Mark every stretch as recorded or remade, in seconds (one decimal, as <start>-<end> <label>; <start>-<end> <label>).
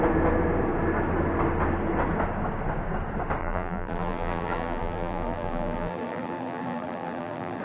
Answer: 0.0-3.4 recorded; 3.4-7.6 remade